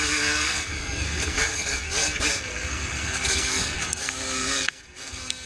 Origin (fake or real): fake